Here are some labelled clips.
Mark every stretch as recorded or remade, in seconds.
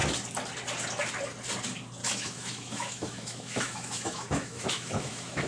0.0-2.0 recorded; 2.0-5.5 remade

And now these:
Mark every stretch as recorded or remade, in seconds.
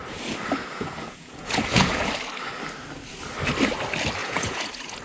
0.0-0.6 recorded; 0.6-2.1 remade; 2.1-4.2 recorded; 4.2-5.0 remade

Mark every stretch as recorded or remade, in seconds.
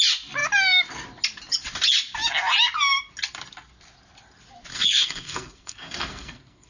0.0-4.7 recorded; 4.7-6.7 remade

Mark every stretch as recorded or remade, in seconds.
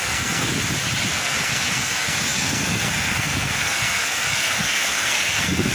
0.0-0.5 remade; 0.5-1.1 recorded; 1.1-5.7 remade